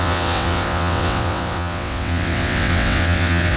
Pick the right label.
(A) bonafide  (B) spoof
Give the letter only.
B